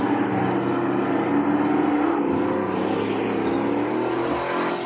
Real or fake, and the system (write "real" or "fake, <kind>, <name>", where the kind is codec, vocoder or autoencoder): real